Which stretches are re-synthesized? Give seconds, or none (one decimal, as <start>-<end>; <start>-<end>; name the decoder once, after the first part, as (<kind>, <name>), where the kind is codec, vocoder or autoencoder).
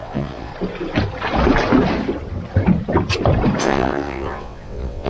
0.0-0.5 (vocoder, WaveNeXt); 3.6-5.1